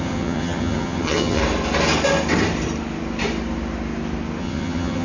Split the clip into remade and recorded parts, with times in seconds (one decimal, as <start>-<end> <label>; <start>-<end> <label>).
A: 0.0-1.4 remade; 1.4-4.4 recorded; 4.4-5.0 remade